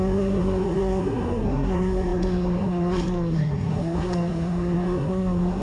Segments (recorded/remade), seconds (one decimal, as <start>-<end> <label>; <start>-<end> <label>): 0.0-5.6 remade